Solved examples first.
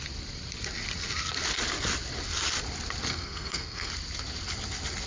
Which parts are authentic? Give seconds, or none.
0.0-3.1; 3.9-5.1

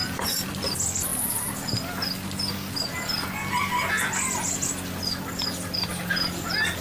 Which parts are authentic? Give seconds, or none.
0.0-6.8